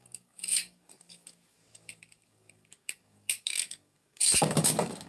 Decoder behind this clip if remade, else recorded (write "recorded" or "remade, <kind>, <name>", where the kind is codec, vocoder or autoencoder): remade, codec, DAC